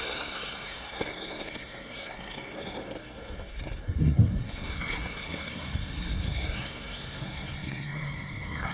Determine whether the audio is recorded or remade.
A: remade